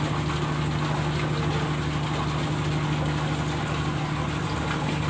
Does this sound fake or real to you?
real